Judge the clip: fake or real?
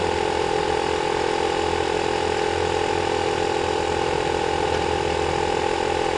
real